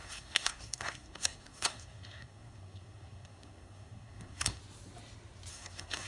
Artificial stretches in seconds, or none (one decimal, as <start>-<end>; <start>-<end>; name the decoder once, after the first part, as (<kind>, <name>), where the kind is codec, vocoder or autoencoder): 0.0-4.6 (codec, SNAC); 5.5-6.1